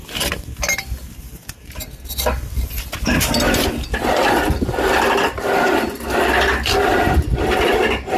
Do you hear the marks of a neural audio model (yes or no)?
no